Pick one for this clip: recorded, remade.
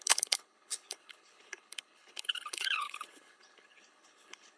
remade